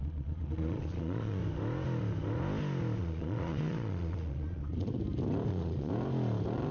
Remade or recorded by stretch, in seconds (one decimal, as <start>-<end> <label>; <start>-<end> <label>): 0.0-1.4 remade; 1.4-3.0 recorded; 3.0-4.9 remade; 4.9-5.5 recorded; 5.5-5.9 remade; 5.9-6.7 recorded

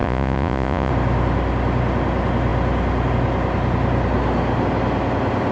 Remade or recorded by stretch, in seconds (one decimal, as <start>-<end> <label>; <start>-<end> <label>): 0.0-0.9 remade; 0.9-5.5 recorded

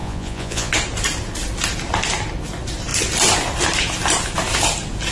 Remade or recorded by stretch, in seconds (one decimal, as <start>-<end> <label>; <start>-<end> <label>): 0.0-0.7 remade; 0.7-5.1 recorded

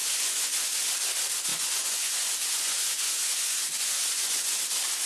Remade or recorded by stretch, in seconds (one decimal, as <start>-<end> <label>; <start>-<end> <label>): 0.0-0.9 remade; 0.9-1.5 recorded; 1.5-4.6 remade; 4.6-5.1 recorded